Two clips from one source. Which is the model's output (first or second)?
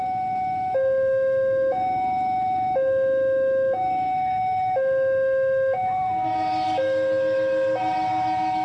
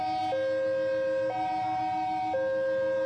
first